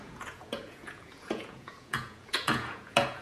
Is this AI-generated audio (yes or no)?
yes